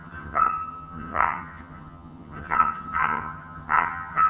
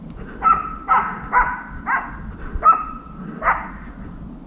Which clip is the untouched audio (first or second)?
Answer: second